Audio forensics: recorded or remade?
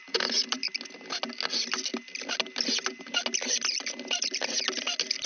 recorded